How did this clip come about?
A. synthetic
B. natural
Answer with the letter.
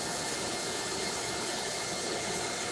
A